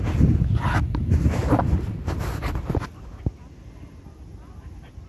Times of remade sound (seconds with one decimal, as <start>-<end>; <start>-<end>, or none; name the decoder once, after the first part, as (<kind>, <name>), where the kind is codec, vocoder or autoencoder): 1.4-2.6 (vocoder, BigVGAN v2)